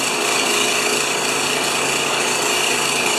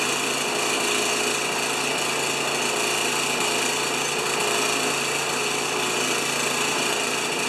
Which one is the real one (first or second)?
second